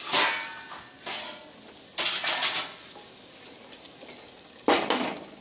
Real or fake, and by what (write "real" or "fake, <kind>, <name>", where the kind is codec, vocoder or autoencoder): real